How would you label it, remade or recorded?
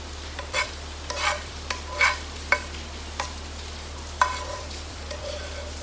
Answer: remade